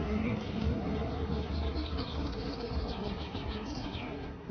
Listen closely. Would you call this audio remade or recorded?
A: remade